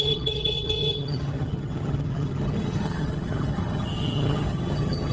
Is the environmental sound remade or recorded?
remade